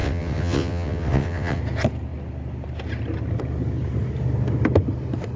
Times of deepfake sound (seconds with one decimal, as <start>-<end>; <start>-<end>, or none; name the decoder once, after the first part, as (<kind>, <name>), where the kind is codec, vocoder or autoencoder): 0.0-1.6 (vocoder, WaveNeXt)